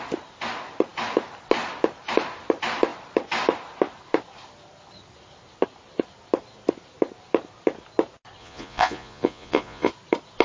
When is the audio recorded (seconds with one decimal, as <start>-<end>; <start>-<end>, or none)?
0.0-8.4; 9.9-10.4